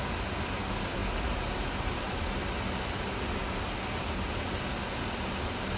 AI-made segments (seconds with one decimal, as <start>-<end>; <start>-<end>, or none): none